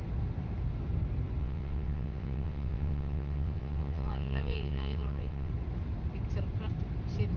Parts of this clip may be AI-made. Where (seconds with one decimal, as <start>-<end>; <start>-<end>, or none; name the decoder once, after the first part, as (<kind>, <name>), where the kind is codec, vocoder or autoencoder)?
1.4-5.5 (vocoder, WaveNeXt)